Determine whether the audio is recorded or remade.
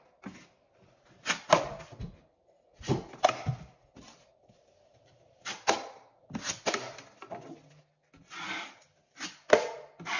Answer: recorded